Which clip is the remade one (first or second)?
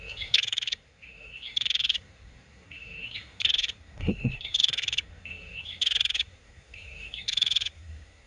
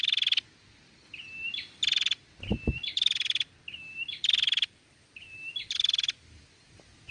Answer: first